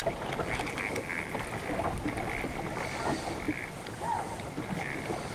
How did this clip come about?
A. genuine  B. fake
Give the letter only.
A